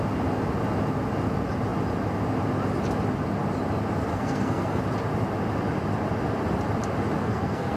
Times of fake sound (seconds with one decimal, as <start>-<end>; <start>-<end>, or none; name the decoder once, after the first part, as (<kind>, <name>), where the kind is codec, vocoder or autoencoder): 4.1-4.8 (codec, SNAC); 7.2-7.8

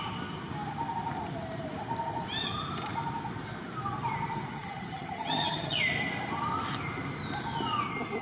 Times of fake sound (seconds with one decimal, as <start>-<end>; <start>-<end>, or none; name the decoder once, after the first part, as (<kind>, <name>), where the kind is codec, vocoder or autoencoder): 4.5-5.8 (vocoder, HiFi-GAN)

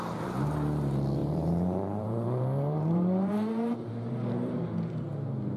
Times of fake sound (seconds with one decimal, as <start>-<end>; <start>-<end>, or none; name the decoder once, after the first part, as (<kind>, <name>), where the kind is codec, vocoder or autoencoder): 1.2-4.6 (vocoder, BigVGAN v2)

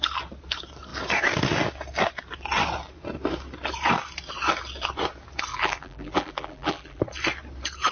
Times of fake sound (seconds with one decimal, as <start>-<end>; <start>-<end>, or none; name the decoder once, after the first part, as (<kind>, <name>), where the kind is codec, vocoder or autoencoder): 5.5-7.0 (vocoder, BigVGAN v2)

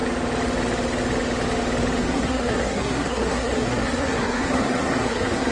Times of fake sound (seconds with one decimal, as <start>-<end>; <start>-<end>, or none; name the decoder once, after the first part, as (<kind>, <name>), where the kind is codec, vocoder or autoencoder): 2.0-5.5 (codec, SNAC)

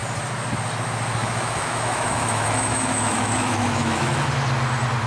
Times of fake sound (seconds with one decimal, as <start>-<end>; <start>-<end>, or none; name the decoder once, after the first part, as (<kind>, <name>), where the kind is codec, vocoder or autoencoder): 1.2-4.3 (autoencoder, DAC-VAE)

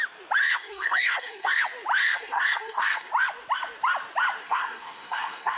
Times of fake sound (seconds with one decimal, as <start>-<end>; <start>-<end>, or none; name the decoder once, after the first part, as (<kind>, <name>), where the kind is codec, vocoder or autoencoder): 0.4-1.6 (codec, SNAC); 2.0-3.1; 4.4-5.6